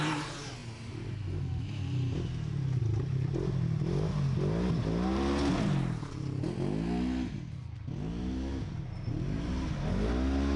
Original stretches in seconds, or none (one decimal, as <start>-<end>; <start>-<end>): 0.0-10.6